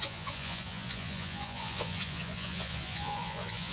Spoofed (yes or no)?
yes